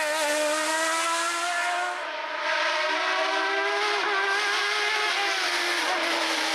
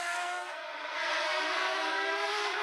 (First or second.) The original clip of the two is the first